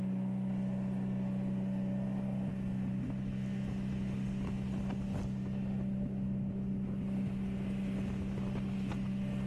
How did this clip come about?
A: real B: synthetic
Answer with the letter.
A